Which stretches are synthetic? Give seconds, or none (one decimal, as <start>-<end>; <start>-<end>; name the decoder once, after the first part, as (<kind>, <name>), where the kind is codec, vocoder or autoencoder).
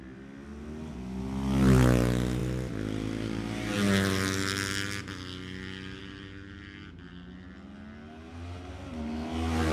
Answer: none